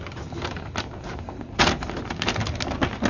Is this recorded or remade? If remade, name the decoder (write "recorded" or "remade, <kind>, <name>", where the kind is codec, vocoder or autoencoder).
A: recorded